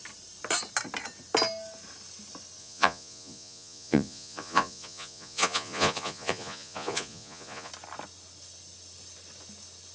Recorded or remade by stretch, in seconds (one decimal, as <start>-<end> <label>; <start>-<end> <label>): 0.0-2.6 recorded; 2.6-7.7 remade; 7.7-9.9 recorded